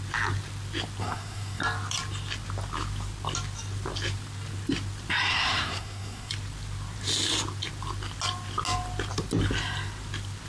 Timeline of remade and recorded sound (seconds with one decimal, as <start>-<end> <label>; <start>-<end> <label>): 0.0-1.0 recorded; 1.0-1.6 remade; 1.6-5.3 recorded; 5.3-6.3 remade; 6.3-10.5 recorded